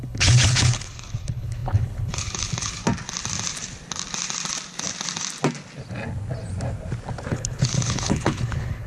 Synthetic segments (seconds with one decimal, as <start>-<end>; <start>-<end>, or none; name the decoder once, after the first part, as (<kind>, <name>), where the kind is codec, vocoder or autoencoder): 0.0-2.8 (codec, HILCodec); 7.3-8.9